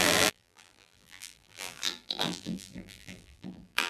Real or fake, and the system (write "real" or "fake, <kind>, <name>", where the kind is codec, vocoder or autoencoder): fake, vocoder, BigVGAN v2